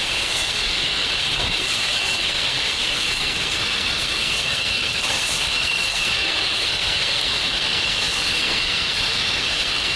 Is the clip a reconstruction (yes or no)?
yes